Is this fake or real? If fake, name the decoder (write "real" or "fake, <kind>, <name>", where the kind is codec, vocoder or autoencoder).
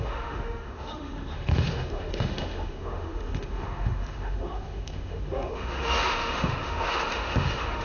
fake, autoencoder, DAC-VAE